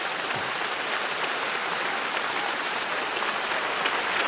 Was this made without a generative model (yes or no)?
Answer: yes